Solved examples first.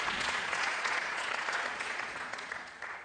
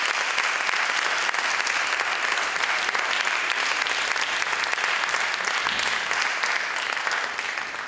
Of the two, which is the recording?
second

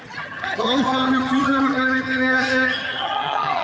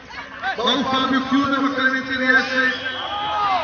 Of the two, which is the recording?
second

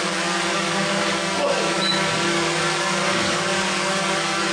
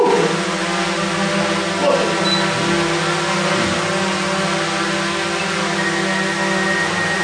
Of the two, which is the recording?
second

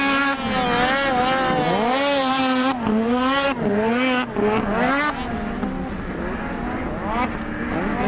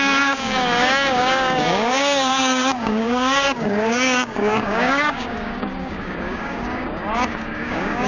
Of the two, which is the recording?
first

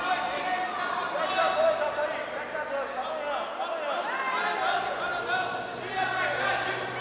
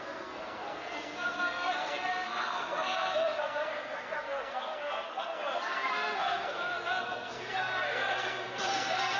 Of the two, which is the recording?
first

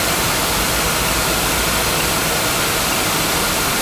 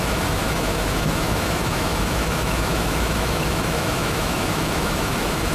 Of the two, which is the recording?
first